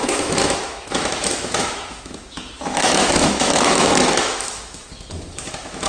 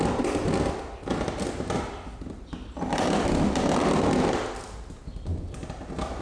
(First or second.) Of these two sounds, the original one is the second